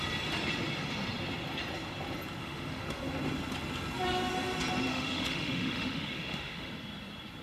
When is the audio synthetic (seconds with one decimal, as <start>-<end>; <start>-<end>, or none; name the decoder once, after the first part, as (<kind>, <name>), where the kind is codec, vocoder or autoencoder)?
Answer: 2.4-3.0 (autoencoder, DAC-VAE); 4.9-6.7